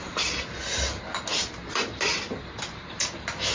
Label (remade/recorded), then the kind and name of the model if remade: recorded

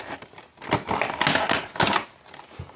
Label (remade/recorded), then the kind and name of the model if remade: recorded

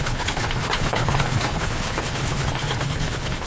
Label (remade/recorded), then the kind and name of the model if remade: remade, codec, HILCodec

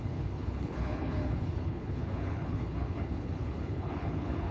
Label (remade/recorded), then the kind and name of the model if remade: remade, codec, HILCodec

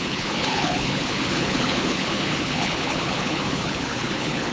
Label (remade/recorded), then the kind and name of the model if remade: remade, codec, HILCodec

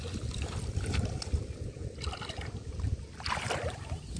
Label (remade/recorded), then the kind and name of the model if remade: recorded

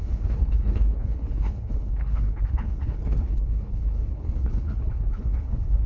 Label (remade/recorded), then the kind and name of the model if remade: remade, codec, HILCodec